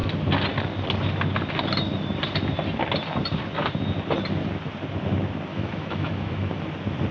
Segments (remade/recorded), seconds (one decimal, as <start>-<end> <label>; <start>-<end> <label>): 0.0-5.5 recorded; 5.5-6.6 remade; 6.6-7.1 recorded